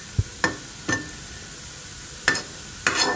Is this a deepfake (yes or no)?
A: no